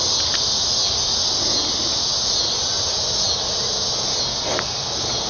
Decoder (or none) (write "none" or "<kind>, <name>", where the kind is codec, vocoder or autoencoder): none